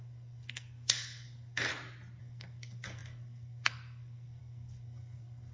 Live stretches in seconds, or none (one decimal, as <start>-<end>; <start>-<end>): 1.7-2.2